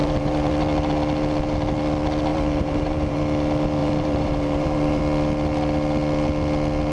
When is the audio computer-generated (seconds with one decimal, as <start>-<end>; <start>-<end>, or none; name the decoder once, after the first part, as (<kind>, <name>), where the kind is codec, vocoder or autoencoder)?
0.0-0.5 (vocoder, BigVGAN v2); 2.3-3.2; 3.8-5.0